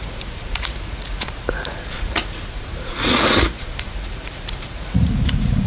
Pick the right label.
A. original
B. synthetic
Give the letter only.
B